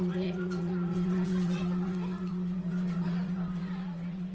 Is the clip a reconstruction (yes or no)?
yes